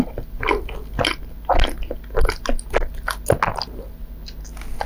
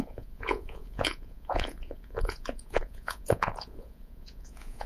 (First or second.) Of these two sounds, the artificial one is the second